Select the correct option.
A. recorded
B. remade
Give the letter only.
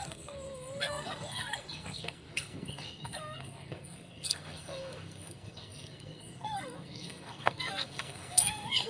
B